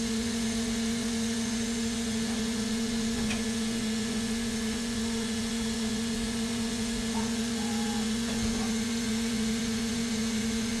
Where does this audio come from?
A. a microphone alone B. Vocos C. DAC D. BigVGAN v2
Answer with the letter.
B